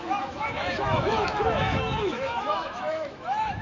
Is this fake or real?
fake